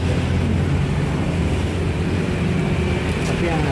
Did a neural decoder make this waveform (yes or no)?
no